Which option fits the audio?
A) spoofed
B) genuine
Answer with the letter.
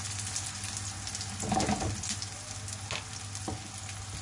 B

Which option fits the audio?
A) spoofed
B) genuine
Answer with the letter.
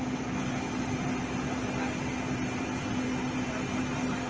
B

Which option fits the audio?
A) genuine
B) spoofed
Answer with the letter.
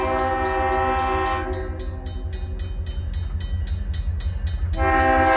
A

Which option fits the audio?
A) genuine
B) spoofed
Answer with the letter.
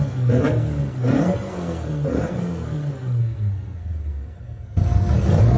B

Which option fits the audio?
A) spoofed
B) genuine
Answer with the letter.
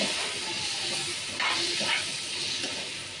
B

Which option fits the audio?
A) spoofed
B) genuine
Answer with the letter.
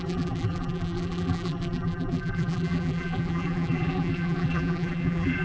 A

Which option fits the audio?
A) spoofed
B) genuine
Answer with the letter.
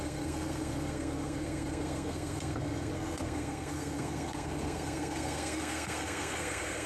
A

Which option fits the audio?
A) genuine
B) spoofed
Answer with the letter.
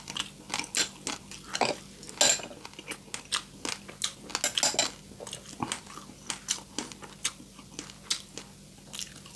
A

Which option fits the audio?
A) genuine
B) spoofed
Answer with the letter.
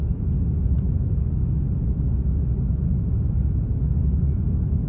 A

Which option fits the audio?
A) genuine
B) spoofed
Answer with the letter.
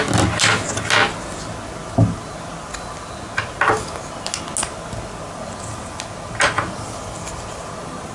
A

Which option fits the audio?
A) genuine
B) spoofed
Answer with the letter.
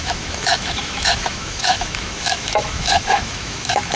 B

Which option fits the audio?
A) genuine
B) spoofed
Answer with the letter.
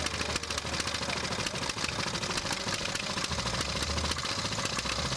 A